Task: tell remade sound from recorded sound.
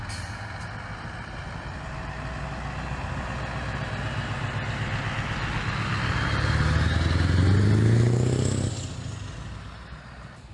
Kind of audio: recorded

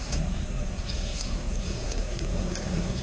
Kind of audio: remade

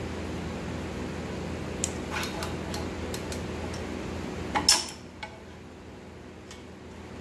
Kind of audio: recorded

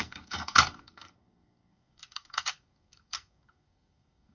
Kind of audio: remade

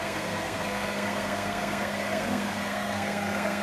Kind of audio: remade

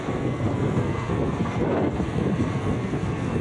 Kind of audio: remade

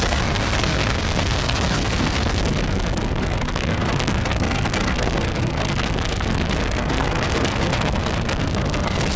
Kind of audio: remade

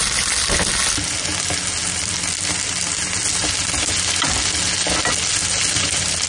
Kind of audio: recorded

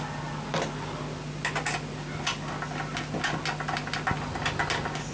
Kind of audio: recorded